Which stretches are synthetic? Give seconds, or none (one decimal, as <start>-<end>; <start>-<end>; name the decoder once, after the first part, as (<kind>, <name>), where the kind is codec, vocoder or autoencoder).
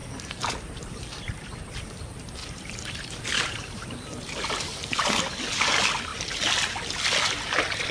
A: 0.0-1.6 (vocoder, BigVGAN v2); 2.4-5.1